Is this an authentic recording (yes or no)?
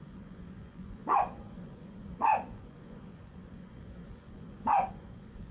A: no